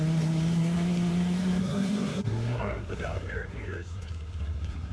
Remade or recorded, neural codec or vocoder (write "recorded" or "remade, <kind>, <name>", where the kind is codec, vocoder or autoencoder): remade, codec, SNAC